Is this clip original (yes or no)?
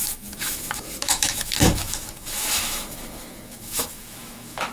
no